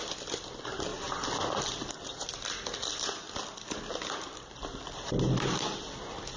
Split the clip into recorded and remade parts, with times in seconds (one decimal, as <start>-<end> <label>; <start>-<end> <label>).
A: 0.0-6.4 recorded